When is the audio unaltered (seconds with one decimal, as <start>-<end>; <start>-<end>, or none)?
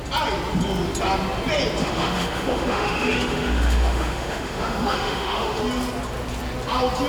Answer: 0.0-1.8; 5.6-7.1